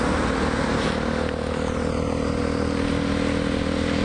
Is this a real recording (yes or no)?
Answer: yes